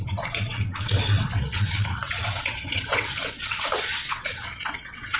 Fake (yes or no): yes